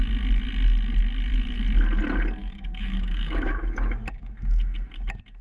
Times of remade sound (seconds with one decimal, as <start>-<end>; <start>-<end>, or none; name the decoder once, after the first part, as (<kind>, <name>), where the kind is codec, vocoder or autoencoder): 2.4-4.3 (autoencoder, DAC-VAE)